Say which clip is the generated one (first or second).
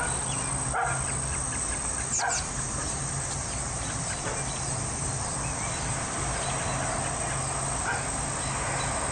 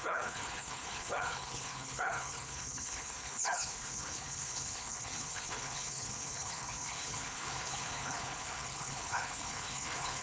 second